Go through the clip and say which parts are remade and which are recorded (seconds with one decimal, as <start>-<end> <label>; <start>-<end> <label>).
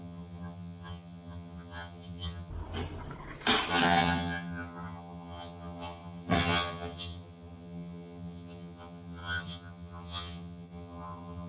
0.0-2.5 remade; 2.5-3.7 recorded; 3.7-11.5 remade